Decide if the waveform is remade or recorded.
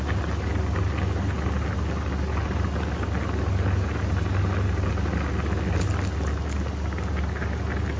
recorded